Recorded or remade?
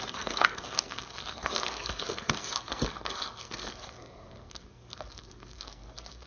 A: remade